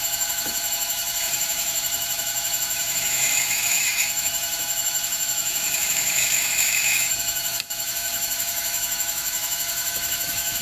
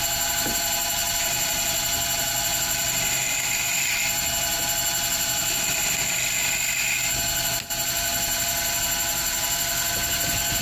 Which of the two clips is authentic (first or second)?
second